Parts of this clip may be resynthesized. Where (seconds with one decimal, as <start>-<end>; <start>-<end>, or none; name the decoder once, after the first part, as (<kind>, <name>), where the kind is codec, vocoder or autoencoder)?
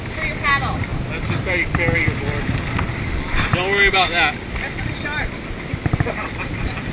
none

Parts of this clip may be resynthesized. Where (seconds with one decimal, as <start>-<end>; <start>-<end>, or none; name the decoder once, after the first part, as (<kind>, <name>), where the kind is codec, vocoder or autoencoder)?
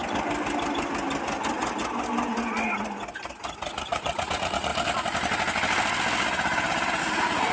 3.7-4.7 (vocoder, Vocos); 7.0-7.5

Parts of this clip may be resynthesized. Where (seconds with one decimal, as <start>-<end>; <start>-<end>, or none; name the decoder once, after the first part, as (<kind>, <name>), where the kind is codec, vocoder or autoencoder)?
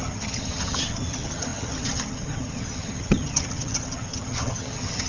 0.0-5.1 (vocoder, HiFi-GAN)